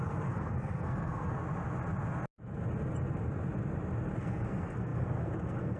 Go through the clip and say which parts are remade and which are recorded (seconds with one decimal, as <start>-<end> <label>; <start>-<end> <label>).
0.0-1.3 remade; 1.3-4.2 recorded; 4.2-5.8 remade